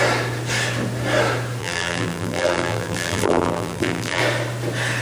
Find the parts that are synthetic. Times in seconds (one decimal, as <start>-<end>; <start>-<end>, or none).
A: 1.6-4.2